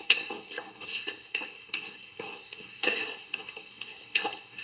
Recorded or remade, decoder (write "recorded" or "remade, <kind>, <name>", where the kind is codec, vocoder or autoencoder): remade, codec, SNAC